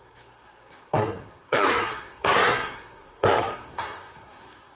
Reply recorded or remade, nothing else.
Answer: remade